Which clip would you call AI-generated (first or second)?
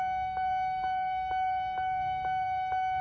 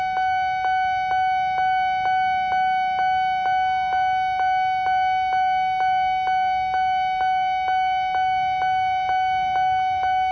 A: first